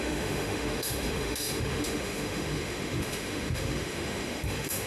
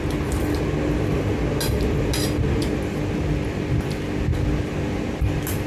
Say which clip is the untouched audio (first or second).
second